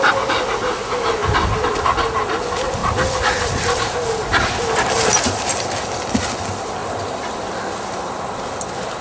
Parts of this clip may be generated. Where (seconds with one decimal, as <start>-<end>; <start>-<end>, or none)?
2.8-4.9; 6.8-7.8